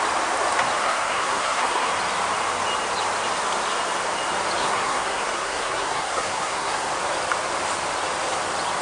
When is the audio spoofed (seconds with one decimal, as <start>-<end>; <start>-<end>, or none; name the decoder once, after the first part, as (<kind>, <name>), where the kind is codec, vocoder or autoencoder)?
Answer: 0.8-1.9 (codec, SNAC); 4.6-6.9